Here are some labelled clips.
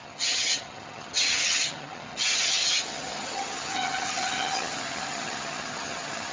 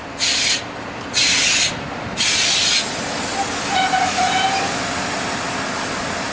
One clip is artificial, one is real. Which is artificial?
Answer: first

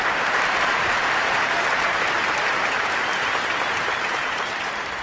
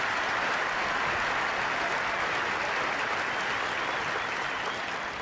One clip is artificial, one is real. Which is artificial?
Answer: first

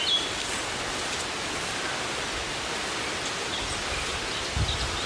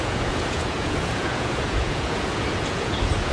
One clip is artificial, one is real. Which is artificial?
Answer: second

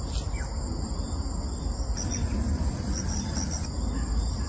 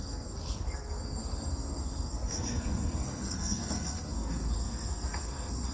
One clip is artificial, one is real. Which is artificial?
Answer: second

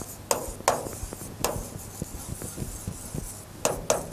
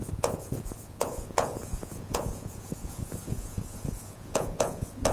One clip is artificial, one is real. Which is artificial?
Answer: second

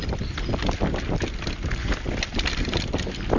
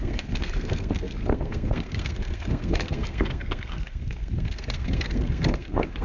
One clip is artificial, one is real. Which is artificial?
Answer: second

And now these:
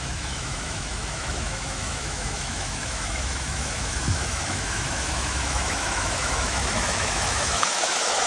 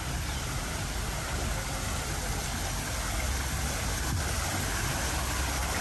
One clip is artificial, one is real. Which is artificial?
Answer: first